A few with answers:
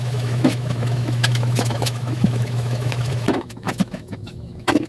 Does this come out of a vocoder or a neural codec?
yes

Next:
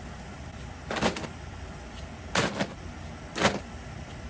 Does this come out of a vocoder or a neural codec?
no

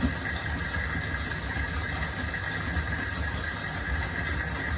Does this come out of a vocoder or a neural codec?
no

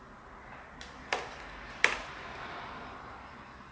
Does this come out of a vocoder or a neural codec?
no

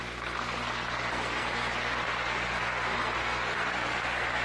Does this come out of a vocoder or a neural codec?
yes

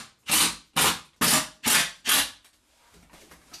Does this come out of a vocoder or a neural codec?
no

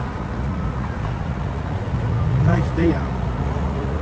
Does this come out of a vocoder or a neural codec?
yes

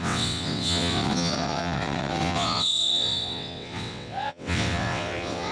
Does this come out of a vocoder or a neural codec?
yes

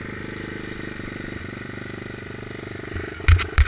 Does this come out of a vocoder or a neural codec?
yes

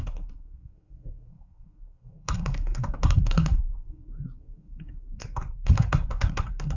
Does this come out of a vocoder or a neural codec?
yes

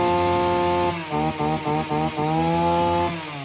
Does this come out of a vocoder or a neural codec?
no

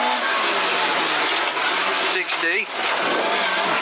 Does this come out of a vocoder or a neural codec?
no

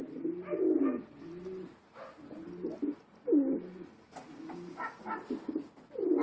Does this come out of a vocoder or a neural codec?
no